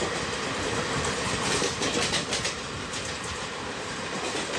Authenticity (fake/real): real